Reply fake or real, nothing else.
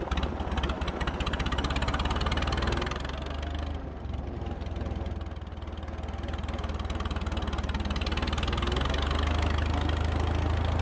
real